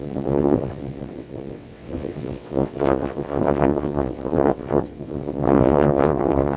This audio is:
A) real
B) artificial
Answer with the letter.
B